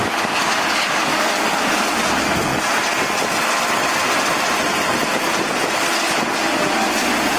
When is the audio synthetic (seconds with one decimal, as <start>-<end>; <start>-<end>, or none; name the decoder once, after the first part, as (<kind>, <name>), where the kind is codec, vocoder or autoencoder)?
0.4-1.9 (codec, DAC)